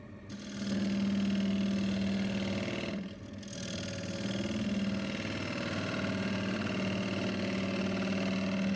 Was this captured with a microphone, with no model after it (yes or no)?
yes